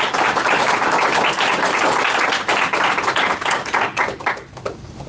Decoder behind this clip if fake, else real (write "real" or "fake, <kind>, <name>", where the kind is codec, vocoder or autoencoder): real